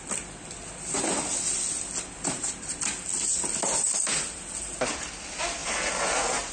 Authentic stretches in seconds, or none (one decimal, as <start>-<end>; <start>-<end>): 0.0-6.5